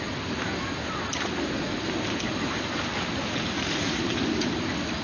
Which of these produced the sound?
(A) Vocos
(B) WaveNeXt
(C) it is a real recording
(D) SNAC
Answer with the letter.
C